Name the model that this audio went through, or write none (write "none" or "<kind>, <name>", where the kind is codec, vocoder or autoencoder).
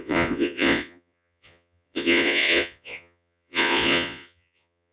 vocoder, Vocos